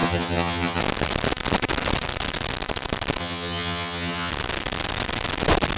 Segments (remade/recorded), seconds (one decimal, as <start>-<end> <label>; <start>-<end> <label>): 0.0-0.8 remade; 0.8-3.2 recorded; 3.2-4.3 remade; 4.3-5.8 recorded